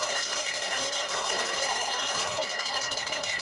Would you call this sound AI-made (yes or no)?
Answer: yes